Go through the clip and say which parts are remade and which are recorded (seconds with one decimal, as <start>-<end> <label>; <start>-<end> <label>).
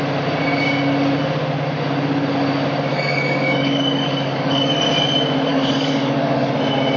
0.0-2.9 recorded; 2.9-4.8 remade; 4.8-5.5 recorded; 5.5-6.5 remade; 6.5-7.0 recorded